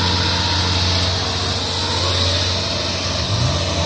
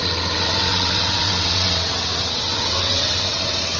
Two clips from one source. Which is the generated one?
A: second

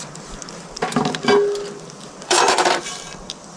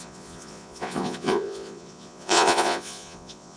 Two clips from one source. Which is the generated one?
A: second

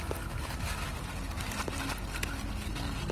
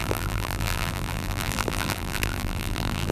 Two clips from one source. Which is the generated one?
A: second